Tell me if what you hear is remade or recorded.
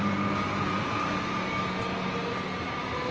recorded